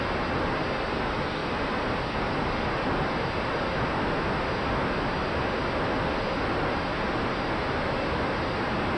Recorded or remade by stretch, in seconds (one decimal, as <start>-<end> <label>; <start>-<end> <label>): 0.0-9.0 recorded